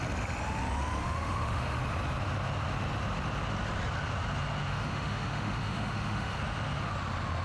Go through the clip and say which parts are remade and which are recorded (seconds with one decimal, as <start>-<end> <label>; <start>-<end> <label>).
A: 0.0-1.0 recorded; 1.0-1.8 remade; 1.8-4.7 recorded; 4.7-6.4 remade; 6.4-7.4 recorded